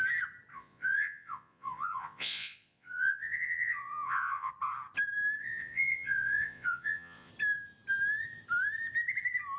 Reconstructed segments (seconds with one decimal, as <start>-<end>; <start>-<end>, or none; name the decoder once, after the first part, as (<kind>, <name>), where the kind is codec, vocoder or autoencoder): 0.5-4.5 (vocoder, Vocos); 5.4-7.3